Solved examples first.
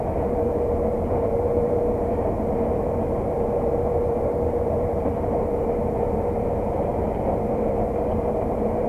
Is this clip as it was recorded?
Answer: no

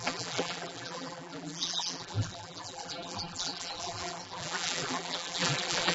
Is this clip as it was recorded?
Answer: no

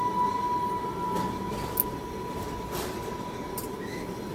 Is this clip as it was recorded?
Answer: yes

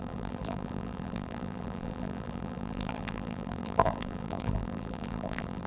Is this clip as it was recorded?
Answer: no